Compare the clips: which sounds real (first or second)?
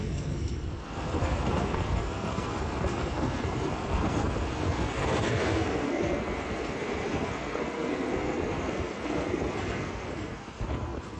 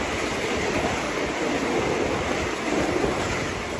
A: second